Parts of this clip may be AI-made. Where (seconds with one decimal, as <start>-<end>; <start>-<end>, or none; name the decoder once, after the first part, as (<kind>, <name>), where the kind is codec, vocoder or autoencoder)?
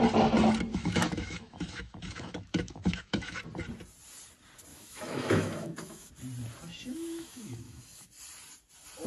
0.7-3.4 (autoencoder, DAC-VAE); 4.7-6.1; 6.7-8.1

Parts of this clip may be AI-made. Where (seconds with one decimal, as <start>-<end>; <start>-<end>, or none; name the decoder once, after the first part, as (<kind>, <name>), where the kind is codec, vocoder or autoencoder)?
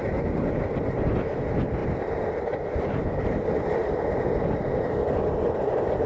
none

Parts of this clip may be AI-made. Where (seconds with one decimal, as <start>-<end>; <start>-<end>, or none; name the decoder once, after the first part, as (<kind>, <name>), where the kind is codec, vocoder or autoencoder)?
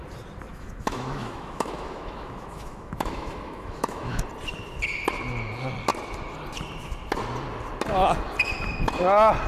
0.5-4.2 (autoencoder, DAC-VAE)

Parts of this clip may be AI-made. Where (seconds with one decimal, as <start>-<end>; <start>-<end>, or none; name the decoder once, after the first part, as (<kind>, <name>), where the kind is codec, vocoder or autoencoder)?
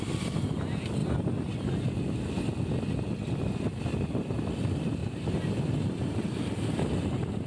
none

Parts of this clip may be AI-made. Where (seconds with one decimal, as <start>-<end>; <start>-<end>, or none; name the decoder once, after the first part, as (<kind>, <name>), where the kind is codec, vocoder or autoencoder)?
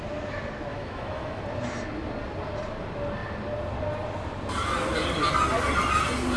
0.7-1.4 (autoencoder, DAC-VAE)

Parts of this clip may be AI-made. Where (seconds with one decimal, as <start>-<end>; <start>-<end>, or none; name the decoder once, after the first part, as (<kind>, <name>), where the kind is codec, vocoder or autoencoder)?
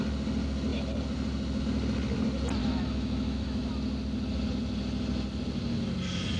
2.6-3.7 (autoencoder, DAC-VAE)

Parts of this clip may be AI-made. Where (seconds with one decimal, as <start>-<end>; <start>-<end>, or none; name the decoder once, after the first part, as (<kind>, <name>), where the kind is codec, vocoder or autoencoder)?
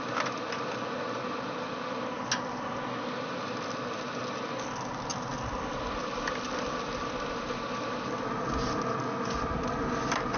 none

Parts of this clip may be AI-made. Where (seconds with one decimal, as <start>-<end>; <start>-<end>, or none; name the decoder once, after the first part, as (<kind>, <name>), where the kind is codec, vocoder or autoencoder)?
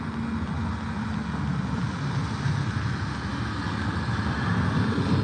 none